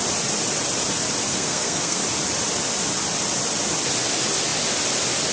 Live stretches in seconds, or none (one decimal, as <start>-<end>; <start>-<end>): 0.0-1.3; 2.0-5.3